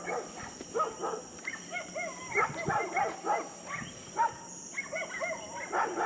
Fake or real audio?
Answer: real